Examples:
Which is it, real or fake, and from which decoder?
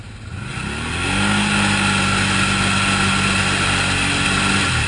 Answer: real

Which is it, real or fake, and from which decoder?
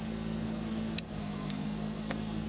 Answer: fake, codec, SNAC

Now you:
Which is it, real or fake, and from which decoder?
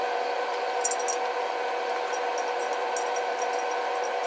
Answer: real